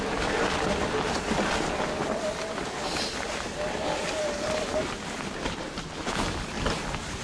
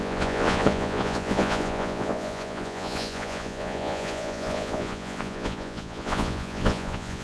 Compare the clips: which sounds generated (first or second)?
second